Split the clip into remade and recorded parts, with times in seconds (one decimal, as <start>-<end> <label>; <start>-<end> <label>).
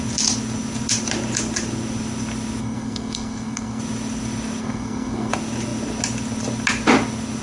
0.0-2.6 recorded; 2.6-3.8 remade; 3.8-4.6 recorded; 4.6-5.3 remade; 5.3-7.4 recorded